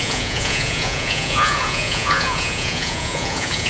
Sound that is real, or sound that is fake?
fake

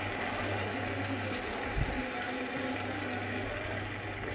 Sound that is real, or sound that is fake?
real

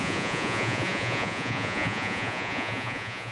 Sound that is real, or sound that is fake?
fake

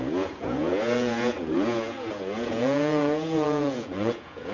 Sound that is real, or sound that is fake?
fake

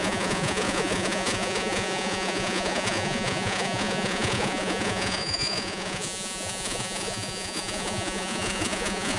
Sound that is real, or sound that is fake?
fake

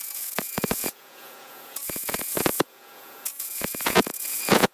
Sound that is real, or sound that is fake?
fake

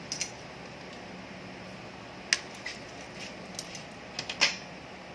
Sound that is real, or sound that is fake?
real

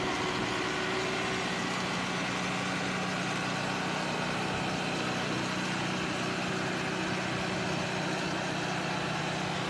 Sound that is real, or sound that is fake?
real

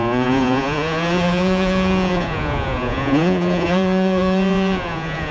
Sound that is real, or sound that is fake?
fake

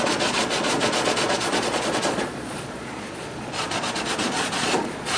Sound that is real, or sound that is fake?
fake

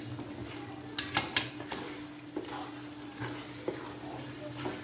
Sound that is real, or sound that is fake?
real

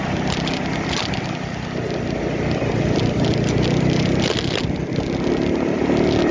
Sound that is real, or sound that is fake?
real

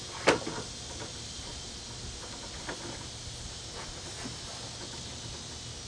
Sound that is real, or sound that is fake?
real